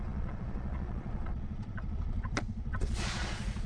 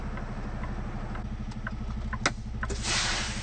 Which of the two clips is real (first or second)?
second